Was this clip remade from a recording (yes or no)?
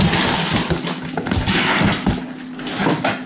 no